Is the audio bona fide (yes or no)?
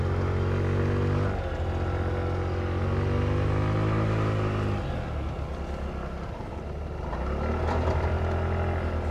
yes